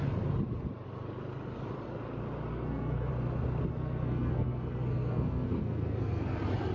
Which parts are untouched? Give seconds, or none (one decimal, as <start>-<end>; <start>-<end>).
0.0-2.5; 3.1-3.7; 6.2-6.7